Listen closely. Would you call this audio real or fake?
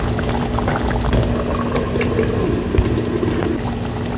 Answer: real